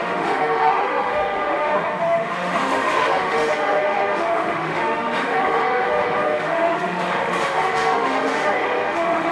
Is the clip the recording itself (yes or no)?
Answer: no